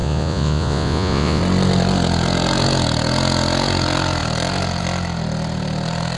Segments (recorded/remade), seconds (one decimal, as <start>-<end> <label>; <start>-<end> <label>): 0.0-1.4 remade; 1.4-6.2 recorded